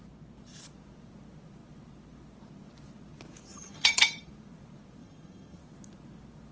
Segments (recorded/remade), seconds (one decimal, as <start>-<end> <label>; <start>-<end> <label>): 0.0-3.5 recorded; 3.5-4.3 remade; 4.3-5.0 recorded; 5.0-5.6 remade; 5.6-6.5 recorded